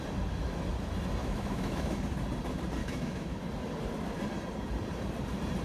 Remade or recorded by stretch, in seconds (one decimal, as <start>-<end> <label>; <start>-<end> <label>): 0.0-1.2 recorded; 1.2-2.0 remade; 2.0-2.8 recorded; 2.8-3.4 remade; 3.4-5.6 recorded